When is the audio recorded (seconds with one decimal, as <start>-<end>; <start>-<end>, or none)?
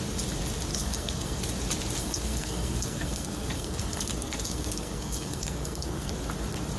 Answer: 0.0-0.7; 1.4-2.0; 6.1-6.8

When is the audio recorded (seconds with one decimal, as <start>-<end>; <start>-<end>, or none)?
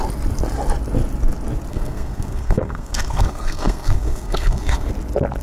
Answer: 0.0-1.7; 4.9-5.4